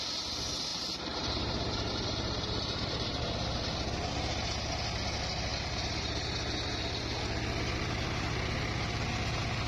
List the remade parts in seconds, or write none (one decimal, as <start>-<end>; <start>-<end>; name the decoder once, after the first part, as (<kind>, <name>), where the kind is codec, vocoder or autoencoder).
0.7-3.2 (vocoder, BigVGAN v2); 5.5-6.5

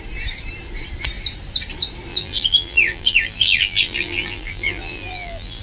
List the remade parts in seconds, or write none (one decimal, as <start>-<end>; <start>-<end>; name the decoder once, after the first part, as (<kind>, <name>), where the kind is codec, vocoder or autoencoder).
2.1-5.6 (vocoder, BigVGAN v2)

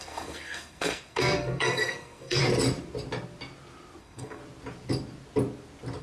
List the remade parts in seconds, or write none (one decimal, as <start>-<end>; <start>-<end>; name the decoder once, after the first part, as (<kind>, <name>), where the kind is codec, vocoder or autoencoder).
0.0-2.4 (codec, SNAC); 4.0-4.4

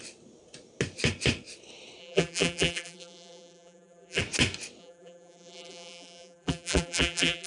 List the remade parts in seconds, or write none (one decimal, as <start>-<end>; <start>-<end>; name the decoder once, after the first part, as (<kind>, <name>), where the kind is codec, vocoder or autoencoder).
2.0-4.2 (vocoder, BigVGAN v2); 4.8-7.5

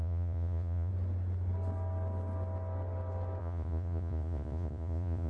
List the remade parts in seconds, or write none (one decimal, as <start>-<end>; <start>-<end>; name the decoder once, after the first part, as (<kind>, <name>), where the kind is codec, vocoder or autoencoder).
0.0-0.9 (vocoder, Vocos); 3.4-5.3

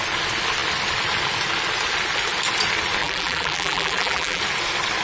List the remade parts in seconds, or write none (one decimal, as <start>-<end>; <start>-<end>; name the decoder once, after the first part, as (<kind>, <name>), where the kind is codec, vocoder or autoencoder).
3.0-4.4 (vocoder, BigVGAN v2)

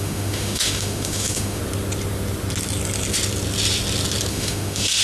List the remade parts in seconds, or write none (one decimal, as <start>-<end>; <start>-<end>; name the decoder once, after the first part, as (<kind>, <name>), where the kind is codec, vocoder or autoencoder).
0.0-1.6 (autoencoder, DAC-VAE); 4.3-5.0